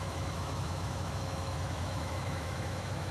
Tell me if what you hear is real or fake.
fake